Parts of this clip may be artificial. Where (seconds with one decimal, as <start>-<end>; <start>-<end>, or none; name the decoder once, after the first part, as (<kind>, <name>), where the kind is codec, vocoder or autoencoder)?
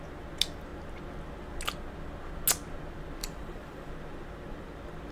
3.2-3.9 (vocoder, BigVGAN v2)